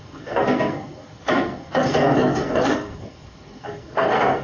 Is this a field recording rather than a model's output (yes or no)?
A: no